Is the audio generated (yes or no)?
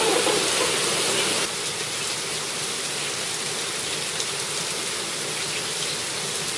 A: no